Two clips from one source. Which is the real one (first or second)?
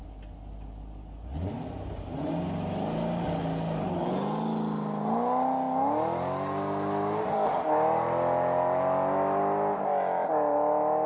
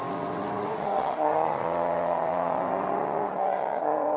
first